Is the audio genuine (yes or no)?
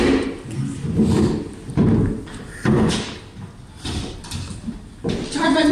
yes